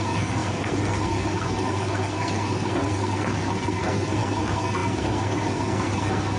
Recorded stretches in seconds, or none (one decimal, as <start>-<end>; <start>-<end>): none